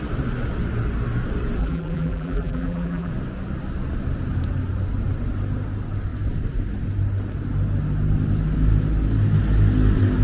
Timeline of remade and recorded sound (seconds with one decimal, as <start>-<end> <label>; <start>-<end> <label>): 0.0-1.6 recorded; 1.6-3.1 remade; 3.1-10.2 recorded

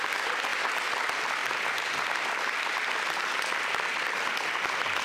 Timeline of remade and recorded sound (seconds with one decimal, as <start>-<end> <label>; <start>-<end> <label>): 0.0-5.0 recorded

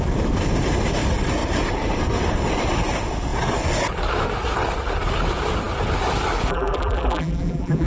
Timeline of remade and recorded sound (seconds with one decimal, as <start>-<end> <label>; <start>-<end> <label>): 0.0-6.5 recorded; 6.5-7.9 remade

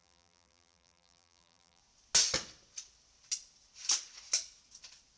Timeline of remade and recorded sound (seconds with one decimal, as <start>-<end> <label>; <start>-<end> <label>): 0.0-1.8 remade; 1.8-5.2 recorded

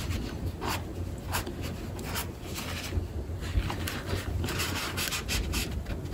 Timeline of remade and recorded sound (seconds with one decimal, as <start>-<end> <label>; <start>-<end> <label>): 0.0-4.1 recorded; 4.1-4.7 remade; 4.7-6.1 recorded

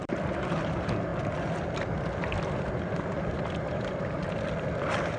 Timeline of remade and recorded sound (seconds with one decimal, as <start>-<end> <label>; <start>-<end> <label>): 0.0-1.1 remade; 1.1-3.4 recorded; 3.4-5.2 remade

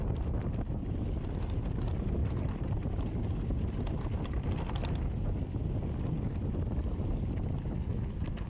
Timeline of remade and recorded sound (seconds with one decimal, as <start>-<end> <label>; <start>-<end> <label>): 0.0-2.2 recorded; 2.2-4.2 remade; 4.2-8.5 recorded